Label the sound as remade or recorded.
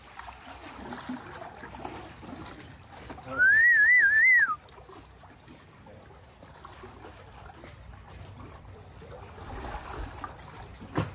recorded